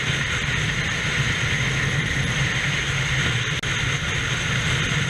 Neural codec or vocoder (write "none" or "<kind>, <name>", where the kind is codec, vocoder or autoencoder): none